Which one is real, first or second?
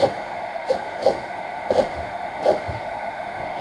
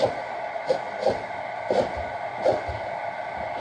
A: second